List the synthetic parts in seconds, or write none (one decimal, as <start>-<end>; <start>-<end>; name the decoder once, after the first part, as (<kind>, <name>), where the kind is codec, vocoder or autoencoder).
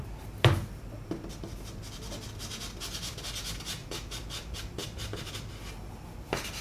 3.8-5.3 (vocoder, BigVGAN v2)